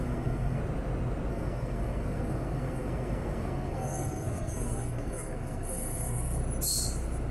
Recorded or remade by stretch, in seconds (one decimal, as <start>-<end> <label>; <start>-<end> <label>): 0.0-0.6 remade; 0.6-1.3 recorded; 1.3-6.4 remade; 6.4-7.3 recorded